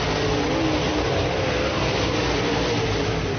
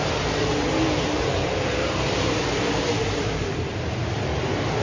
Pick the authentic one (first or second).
first